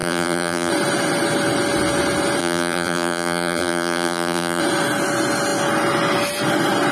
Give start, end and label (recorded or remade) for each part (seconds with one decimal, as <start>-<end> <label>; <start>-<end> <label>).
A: 0.0-0.7 remade; 0.7-2.4 recorded; 2.4-4.6 remade; 4.6-6.9 recorded